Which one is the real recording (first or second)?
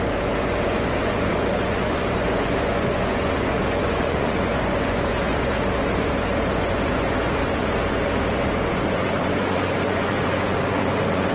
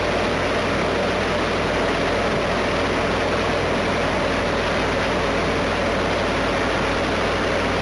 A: second